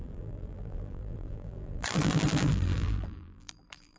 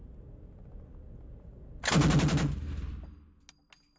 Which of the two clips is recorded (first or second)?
second